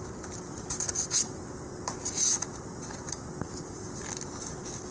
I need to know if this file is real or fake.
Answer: real